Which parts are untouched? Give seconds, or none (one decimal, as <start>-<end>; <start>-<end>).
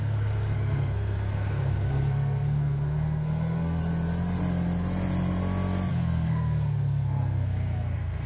3.8-5.9